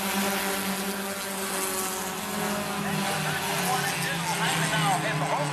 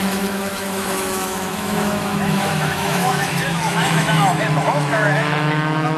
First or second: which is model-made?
second